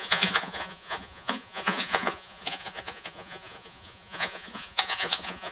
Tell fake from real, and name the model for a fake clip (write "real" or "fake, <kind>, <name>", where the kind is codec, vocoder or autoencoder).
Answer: fake, vocoder, Vocos